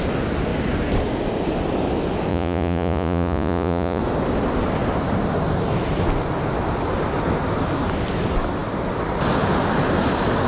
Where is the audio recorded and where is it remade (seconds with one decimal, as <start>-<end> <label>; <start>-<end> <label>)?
0.0-2.3 recorded; 2.3-4.0 remade; 4.0-10.5 recorded